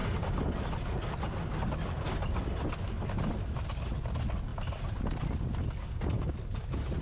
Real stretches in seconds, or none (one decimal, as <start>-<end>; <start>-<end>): 0.0-7.0